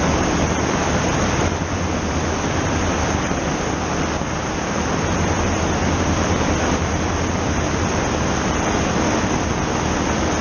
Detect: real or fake real